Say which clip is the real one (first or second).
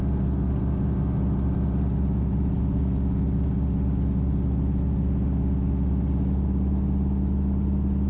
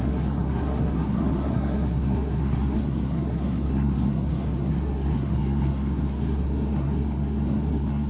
first